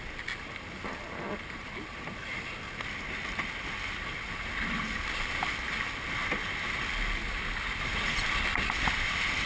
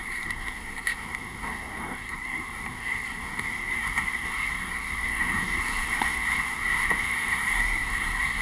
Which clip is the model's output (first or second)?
second